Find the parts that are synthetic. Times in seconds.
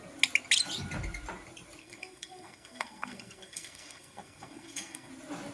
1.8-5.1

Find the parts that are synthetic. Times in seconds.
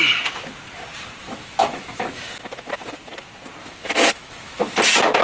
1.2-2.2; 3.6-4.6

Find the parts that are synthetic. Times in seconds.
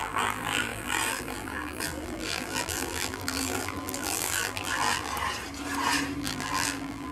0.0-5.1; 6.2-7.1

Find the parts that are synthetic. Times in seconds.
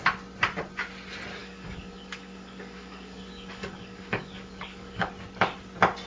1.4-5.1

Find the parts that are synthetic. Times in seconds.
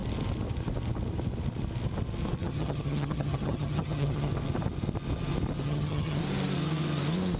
2.4-4.3; 5.6-6.2